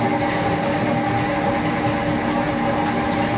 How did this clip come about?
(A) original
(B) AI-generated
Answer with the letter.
A